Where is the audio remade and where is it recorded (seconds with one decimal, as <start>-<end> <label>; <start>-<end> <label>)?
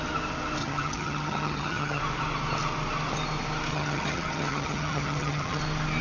0.0-0.6 recorded; 0.6-2.0 remade; 2.0-3.7 recorded; 3.7-5.6 remade; 5.6-6.0 recorded